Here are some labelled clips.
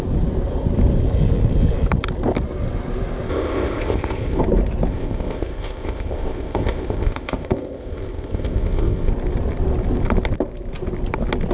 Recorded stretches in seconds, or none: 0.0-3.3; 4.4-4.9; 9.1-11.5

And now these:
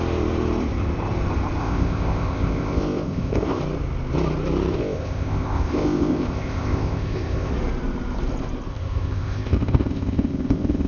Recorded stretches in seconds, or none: 0.0-1.6; 3.6-4.7; 7.5-8.7

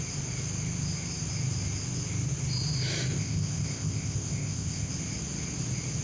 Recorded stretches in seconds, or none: 0.0-3.1; 4.9-6.0

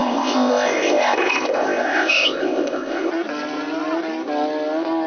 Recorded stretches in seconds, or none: 3.1-5.1

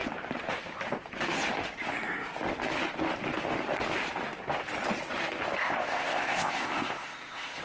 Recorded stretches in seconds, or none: 0.0-5.6